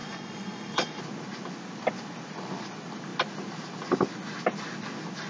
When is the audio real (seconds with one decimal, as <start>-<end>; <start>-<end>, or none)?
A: 1.0-5.3

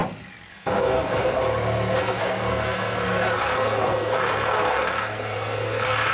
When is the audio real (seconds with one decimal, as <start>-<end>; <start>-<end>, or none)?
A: 0.0-0.5; 1.4-2.0

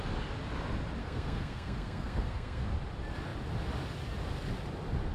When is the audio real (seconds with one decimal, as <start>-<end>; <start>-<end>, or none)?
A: 0.0-1.0; 2.6-5.1